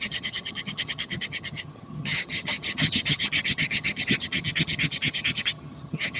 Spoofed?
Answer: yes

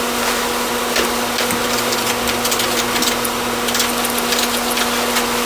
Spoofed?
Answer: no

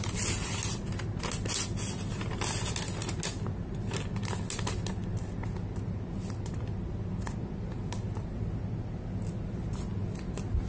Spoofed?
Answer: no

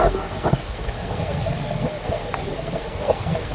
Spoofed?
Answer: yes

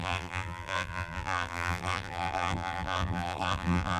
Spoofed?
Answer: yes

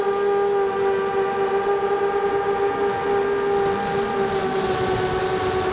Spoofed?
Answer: no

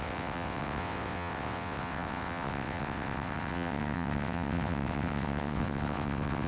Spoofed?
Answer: yes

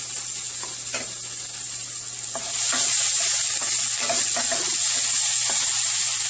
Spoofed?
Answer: no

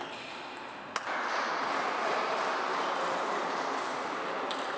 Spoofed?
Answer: no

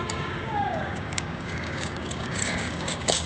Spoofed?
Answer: yes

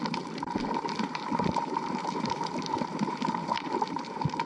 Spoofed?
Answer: yes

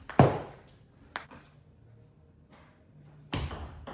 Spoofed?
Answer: no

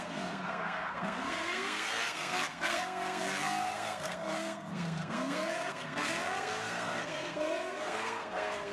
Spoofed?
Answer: yes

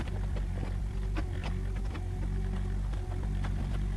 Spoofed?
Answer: yes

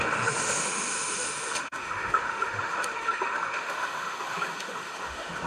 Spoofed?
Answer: yes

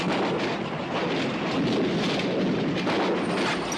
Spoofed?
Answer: no